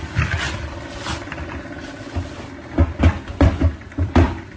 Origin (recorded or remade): remade